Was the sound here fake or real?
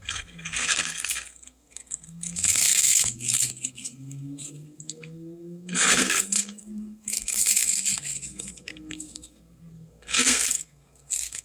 fake